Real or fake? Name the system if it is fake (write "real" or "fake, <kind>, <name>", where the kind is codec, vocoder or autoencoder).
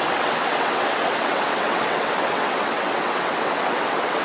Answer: fake, vocoder, WaveNeXt